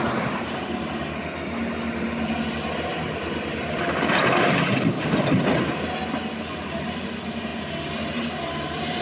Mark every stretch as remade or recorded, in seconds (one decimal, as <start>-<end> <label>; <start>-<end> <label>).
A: 0.0-2.9 recorded; 2.9-4.2 remade; 4.2-9.0 recorded